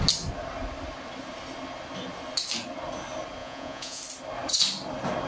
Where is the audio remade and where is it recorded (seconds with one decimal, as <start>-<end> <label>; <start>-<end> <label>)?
0.0-3.4 recorded; 3.4-4.0 remade; 4.0-5.3 recorded